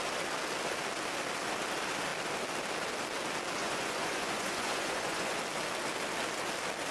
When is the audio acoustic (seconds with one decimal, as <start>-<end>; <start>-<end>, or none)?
0.0-3.6; 5.4-6.9